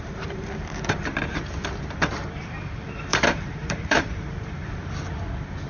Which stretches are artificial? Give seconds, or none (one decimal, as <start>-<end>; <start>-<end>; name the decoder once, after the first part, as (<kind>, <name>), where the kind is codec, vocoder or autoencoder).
0.0-1.1 (vocoder, BigVGAN v2); 2.1-4.8